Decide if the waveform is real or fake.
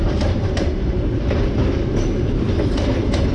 fake